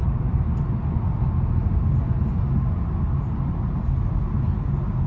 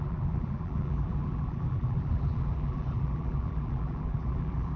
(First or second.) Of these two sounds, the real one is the first